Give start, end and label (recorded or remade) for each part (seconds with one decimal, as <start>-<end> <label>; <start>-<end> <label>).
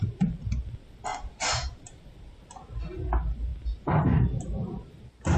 0.0-1.1 recorded; 1.1-2.0 remade; 2.0-5.4 recorded